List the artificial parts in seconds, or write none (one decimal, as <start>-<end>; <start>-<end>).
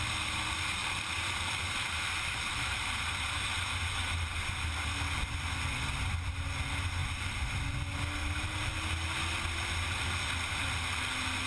0.8-3.0; 7.0-7.6; 8.2-8.7